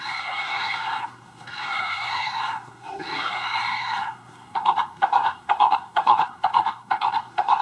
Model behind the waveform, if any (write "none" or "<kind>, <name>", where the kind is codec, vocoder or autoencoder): codec, SNAC